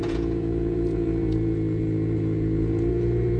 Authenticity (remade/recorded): remade